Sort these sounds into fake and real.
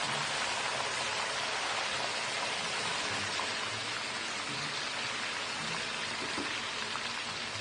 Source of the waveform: real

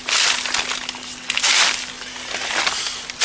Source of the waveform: real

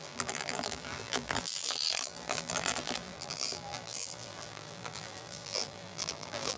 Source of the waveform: fake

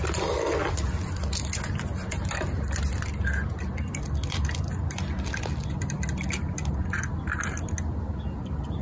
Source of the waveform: real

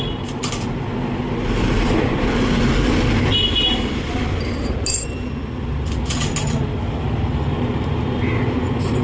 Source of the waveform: real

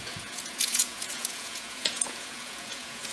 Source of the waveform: fake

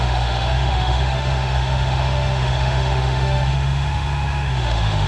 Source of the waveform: fake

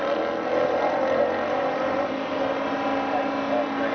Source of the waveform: real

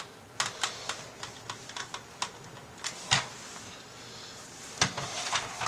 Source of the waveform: real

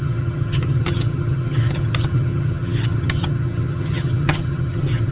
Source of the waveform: fake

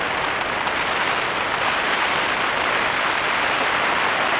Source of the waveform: real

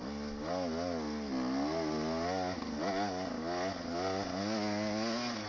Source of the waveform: real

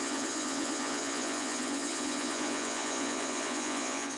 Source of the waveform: fake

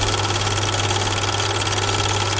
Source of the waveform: real